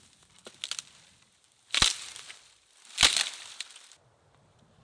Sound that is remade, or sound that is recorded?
recorded